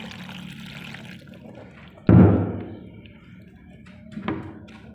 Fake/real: real